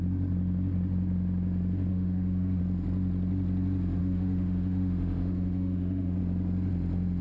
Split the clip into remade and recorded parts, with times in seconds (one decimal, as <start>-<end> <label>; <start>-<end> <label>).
0.0-1.9 recorded; 1.9-2.6 remade; 2.6-4.0 recorded; 4.0-6.2 remade; 6.2-7.2 recorded